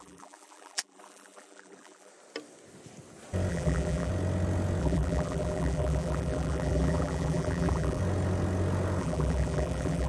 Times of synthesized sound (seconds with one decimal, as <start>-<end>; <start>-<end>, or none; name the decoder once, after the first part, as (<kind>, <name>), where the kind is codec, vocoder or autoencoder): 0.0-2.1 (vocoder, BigVGAN v2); 3.5-4.1; 4.8-8.0; 9.0-10.1